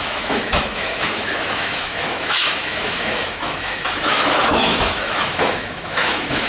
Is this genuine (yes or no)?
no